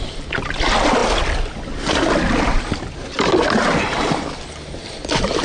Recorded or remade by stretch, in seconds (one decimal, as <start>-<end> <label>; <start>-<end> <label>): 0.0-5.4 recorded